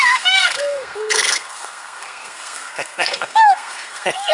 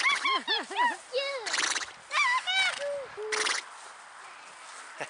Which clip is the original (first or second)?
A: second